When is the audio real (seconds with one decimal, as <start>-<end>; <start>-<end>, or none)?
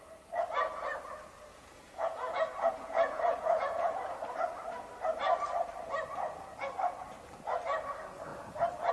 0.0-1.5; 4.2-8.9